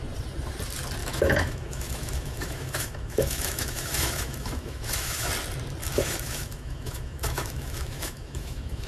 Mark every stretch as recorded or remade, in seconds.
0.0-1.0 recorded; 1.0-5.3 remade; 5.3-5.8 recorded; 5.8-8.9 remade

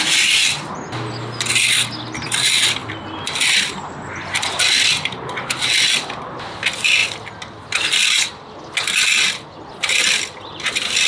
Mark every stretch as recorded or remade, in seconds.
0.0-11.1 recorded

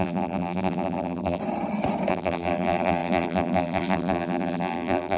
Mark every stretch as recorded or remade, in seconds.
0.0-1.4 remade; 1.4-2.1 recorded; 2.1-5.2 remade